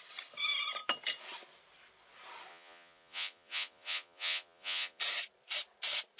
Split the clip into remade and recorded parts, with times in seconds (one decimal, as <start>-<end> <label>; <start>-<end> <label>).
0.0-2.5 recorded; 2.5-5.0 remade; 5.0-6.2 recorded